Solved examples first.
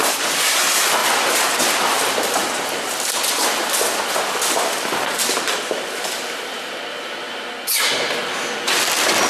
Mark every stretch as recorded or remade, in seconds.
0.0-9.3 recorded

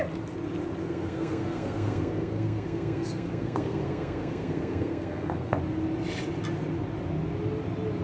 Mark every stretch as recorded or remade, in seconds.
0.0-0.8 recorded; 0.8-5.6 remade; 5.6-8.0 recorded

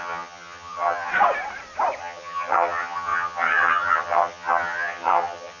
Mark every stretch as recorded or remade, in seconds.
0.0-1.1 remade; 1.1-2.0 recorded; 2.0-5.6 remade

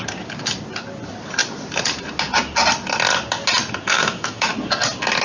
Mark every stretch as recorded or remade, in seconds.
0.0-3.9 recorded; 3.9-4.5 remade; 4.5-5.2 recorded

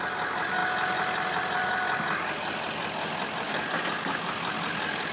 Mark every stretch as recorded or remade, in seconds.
0.0-5.1 recorded

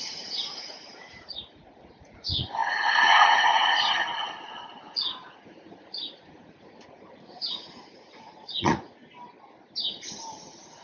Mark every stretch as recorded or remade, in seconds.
0.0-9.0 remade; 9.0-9.8 recorded; 9.8-10.8 remade